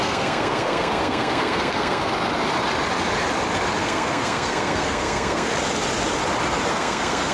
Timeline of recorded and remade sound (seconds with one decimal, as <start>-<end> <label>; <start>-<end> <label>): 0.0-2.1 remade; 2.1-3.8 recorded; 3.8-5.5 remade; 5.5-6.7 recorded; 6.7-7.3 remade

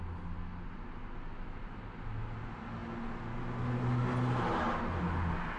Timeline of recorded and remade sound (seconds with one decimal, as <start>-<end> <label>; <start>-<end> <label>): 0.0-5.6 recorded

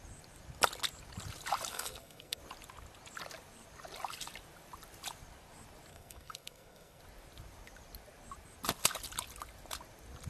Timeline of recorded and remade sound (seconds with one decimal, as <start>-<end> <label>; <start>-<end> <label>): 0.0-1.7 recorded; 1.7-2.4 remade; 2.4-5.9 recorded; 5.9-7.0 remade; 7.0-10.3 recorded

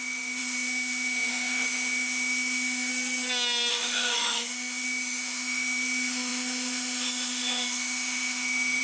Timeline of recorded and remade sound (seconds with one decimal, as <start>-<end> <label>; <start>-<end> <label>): 0.0-2.9 remade; 2.9-3.7 recorded; 3.7-8.8 remade

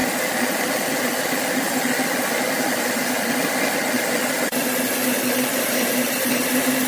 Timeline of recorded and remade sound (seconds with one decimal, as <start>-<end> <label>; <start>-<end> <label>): 0.0-5.5 recorded; 5.5-6.9 remade

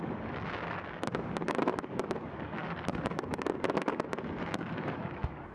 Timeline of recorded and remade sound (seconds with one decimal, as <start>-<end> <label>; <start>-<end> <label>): 0.0-5.5 remade

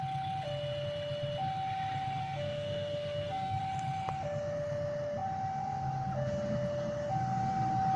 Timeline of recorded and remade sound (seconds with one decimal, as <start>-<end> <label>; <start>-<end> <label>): 0.0-2.2 recorded; 2.2-3.6 remade; 3.6-8.0 recorded